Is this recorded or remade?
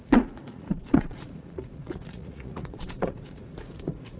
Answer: remade